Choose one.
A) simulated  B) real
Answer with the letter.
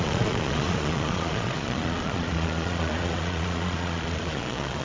A